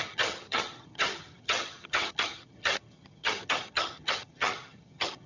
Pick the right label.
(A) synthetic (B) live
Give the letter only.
A